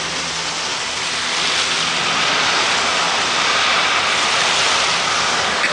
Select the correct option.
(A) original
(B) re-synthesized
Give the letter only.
A